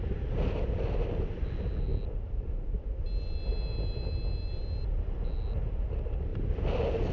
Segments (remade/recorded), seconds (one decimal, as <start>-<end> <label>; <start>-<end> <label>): 0.0-7.1 recorded